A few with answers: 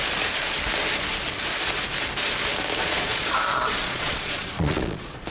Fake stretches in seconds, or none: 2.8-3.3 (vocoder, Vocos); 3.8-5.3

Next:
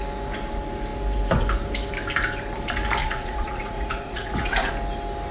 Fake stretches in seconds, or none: 3.0-4.7 (vocoder, Vocos)

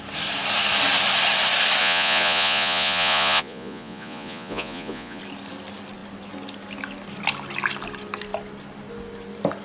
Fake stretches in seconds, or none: 1.8-5.2 (vocoder, Vocos)

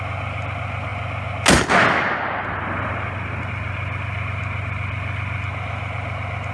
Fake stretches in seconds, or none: none

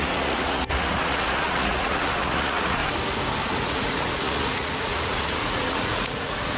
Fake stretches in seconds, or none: 0.0-2.8 (vocoder, Vocos); 3.4-6.6

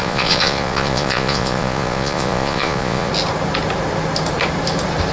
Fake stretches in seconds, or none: 0.0-3.1 (vocoder, Vocos)

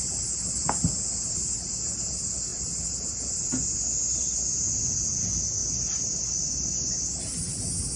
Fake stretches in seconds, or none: none